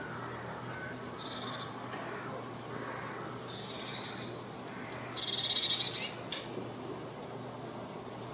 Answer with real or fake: real